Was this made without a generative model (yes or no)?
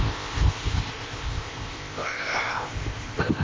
no